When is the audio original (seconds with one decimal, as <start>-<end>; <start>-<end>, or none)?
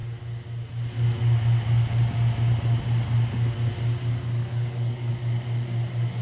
0.0-4.4; 5.1-6.2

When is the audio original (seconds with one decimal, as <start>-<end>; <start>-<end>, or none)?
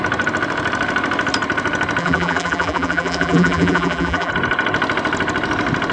0.0-2.0; 4.3-5.9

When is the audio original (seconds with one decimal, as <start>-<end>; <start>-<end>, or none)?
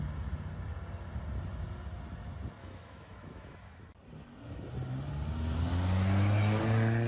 0.0-2.6; 3.9-7.1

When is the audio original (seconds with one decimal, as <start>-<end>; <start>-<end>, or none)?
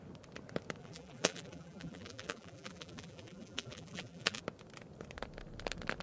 0.0-0.8; 4.4-6.0